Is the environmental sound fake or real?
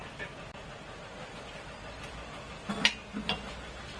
real